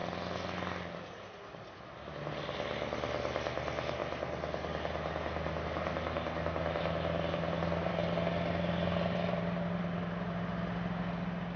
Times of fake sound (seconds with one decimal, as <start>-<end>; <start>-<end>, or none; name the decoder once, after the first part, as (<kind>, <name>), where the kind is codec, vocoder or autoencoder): none